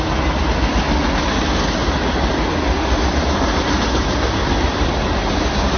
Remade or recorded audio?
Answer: recorded